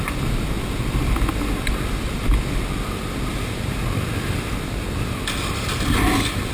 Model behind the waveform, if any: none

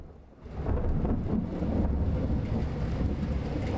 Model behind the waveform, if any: none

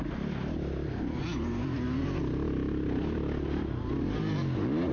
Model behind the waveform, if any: none